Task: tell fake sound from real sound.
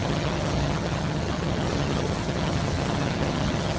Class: fake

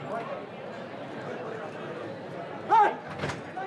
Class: real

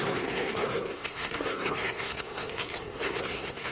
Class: fake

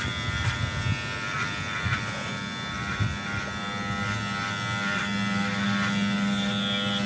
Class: real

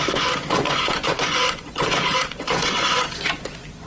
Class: fake